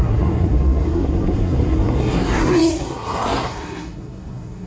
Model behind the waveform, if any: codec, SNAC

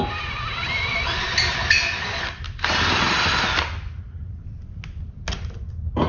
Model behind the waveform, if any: none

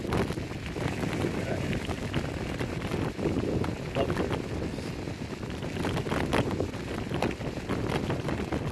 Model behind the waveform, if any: none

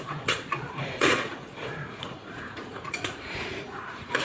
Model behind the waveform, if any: vocoder, Vocos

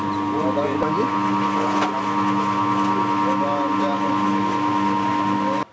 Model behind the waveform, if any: none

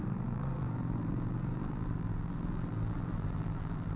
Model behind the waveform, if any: vocoder, BigVGAN v2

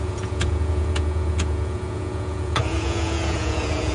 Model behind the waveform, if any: vocoder, Vocos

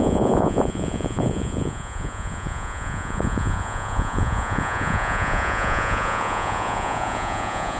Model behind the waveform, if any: vocoder, Vocos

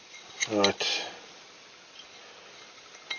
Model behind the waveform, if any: none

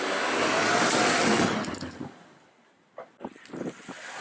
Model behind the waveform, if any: none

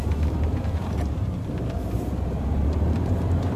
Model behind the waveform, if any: vocoder, BigVGAN v2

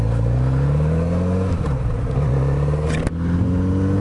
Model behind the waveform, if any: none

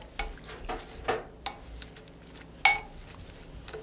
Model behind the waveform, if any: none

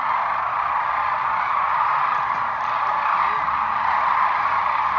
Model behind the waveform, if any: none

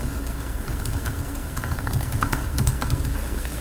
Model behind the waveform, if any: codec, SNAC